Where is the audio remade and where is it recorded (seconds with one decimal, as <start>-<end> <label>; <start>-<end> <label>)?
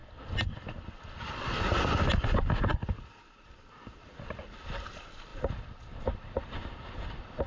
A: 0.0-7.5 recorded